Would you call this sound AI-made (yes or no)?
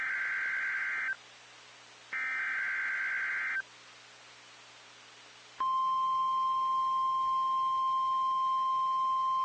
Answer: no